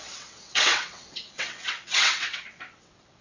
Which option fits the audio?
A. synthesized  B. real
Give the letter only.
A